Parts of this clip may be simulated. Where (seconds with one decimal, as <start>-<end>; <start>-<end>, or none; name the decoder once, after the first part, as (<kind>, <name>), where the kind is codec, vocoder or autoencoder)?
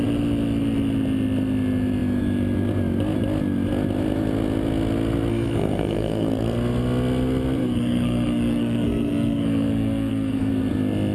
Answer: 5.3-6.3 (codec, SNAC); 7.6-10.5